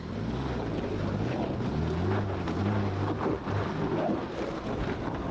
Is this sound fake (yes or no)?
no